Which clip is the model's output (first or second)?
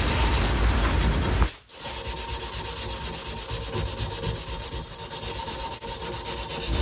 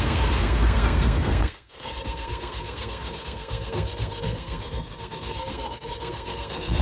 second